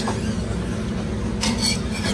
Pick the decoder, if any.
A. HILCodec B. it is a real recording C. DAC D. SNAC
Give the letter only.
B